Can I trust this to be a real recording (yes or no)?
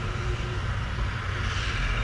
yes